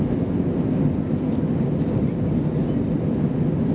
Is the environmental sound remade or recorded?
recorded